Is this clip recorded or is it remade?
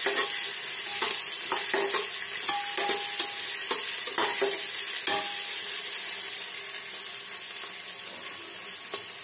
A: recorded